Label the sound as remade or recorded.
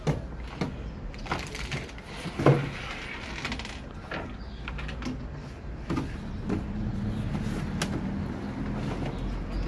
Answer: recorded